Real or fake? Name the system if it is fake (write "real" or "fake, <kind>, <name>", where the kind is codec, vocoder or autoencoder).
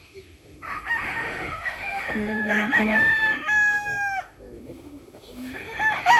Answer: fake, autoencoder, DAC-VAE